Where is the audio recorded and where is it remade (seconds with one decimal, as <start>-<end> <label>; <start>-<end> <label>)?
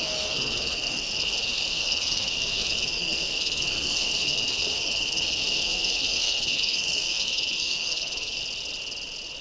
0.0-8.4 remade; 8.4-9.4 recorded